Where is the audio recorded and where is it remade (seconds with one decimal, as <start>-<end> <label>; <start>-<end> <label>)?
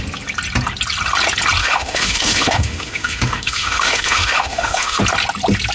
0.0-1.6 recorded; 1.6-5.0 remade; 5.0-5.7 recorded